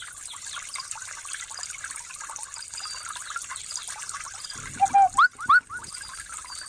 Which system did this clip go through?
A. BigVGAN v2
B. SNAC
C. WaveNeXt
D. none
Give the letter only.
D